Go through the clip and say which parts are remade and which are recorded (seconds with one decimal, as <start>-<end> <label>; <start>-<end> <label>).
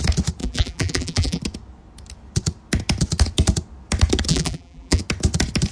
0.0-0.4 recorded; 0.4-1.4 remade; 1.4-4.3 recorded; 4.3-5.0 remade; 5.0-5.7 recorded